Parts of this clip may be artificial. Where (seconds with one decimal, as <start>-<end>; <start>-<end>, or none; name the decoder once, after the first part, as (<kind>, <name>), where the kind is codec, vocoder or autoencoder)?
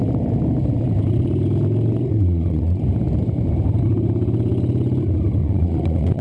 2.1-2.8 (vocoder, Vocos); 5.4-6.2